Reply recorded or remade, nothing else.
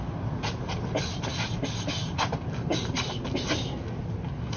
recorded